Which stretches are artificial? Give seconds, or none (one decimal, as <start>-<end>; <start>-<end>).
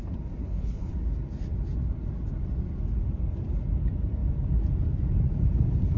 0.4-0.9